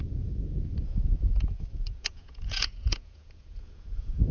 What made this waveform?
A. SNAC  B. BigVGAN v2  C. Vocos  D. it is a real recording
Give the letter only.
C